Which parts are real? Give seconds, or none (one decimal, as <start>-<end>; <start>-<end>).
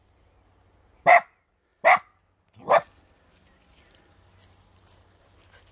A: 0.0-5.7